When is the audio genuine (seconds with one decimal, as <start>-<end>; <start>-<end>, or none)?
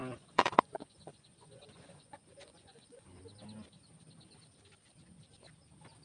3.2-6.0